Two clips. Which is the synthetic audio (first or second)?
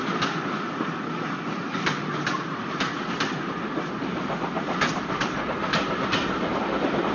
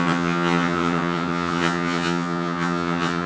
second